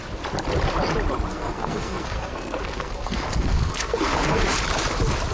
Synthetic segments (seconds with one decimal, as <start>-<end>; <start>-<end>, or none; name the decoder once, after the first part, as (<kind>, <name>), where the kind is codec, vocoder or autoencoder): 1.3-4.5 (codec, SNAC)